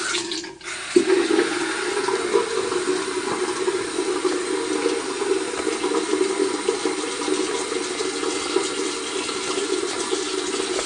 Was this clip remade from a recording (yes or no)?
no